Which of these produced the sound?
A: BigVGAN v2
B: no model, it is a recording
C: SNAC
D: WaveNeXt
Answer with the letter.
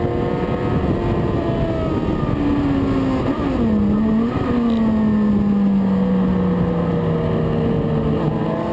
B